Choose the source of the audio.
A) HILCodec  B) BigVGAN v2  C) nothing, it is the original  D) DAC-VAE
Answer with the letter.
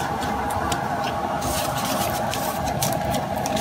B